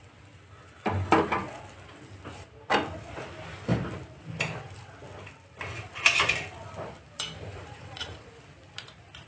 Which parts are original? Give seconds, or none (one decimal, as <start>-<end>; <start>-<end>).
0.0-7.5; 8.3-9.3

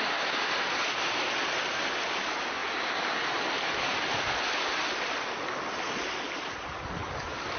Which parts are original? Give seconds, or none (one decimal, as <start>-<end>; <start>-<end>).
0.0-7.6

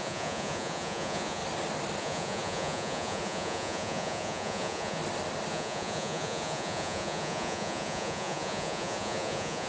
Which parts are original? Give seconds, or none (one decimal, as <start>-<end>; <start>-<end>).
1.4-2.0; 5.0-5.5

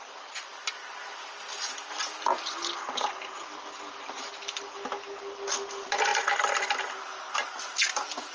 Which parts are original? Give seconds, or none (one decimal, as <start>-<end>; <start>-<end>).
0.0-8.3

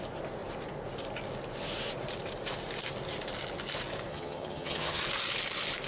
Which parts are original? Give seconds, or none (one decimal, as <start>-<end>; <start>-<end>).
0.0-4.1; 5.0-5.9

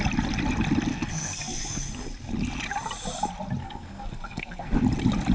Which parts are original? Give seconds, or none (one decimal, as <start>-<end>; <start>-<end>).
0.0-0.9; 1.9-3.6; 4.7-5.3

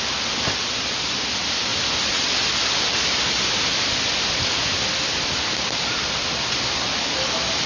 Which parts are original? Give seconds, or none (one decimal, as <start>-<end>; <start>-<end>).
0.0-7.7